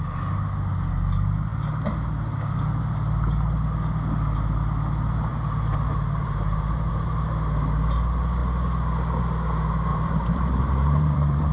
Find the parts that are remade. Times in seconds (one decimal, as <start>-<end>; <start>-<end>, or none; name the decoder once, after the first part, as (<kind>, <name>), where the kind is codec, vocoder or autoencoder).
5.3-6.9 (vocoder, BigVGAN v2); 9.9-11.5